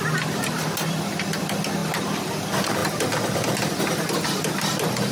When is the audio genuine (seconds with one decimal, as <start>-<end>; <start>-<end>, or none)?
0.0-5.1